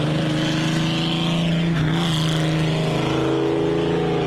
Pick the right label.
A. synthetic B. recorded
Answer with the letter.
B